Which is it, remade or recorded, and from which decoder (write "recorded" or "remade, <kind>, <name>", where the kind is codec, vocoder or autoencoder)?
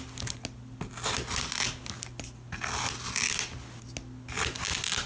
recorded